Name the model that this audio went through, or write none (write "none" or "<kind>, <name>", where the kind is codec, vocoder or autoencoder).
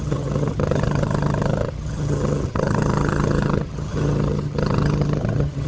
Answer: vocoder, HiFi-GAN